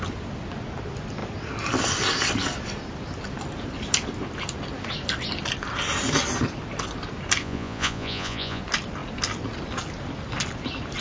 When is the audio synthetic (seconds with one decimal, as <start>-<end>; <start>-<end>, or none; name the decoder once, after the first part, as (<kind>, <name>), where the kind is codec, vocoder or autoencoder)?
7.4-8.6 (vocoder, Vocos)